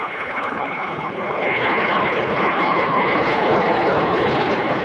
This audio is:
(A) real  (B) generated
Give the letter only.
B